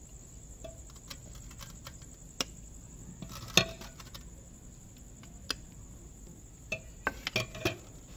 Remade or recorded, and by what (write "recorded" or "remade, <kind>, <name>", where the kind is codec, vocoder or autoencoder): recorded